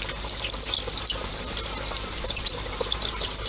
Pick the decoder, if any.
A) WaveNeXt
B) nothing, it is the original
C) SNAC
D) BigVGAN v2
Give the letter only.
D